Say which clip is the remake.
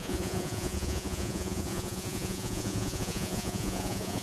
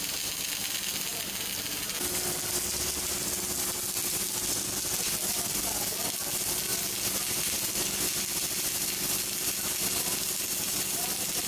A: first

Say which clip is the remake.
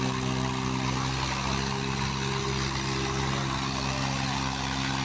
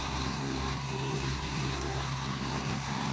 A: second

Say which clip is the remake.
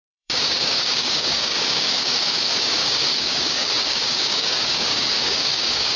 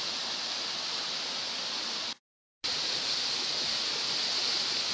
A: first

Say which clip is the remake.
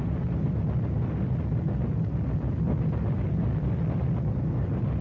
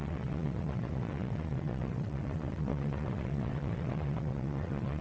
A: second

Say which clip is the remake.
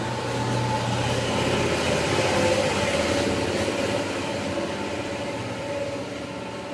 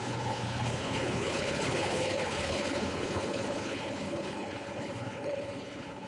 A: second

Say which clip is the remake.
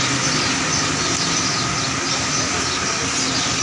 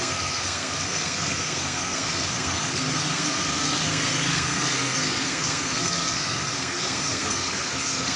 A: second